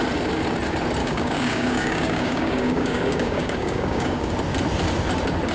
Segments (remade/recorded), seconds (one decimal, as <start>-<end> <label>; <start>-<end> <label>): 0.0-1.0 recorded; 1.0-4.3 remade; 4.3-5.5 recorded

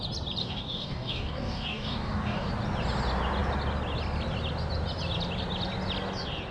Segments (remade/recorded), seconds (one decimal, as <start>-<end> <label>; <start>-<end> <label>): 0.0-0.4 recorded; 0.4-2.5 remade; 2.5-6.5 recorded